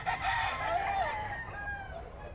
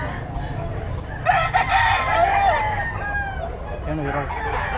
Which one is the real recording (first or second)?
second